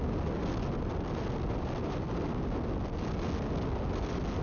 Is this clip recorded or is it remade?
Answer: recorded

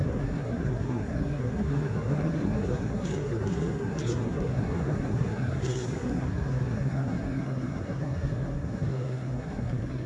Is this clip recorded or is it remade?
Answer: remade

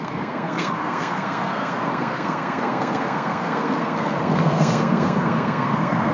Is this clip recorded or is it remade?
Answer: remade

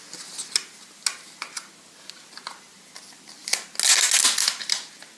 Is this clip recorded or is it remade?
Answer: recorded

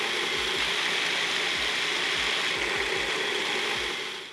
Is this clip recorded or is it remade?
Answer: recorded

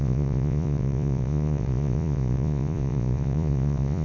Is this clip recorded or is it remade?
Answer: remade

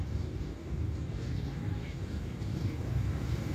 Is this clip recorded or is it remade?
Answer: remade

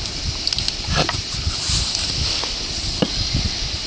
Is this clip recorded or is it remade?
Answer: recorded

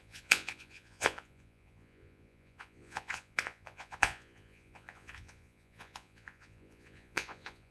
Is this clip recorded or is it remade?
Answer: remade